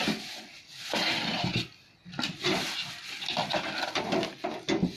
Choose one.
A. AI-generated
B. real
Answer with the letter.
B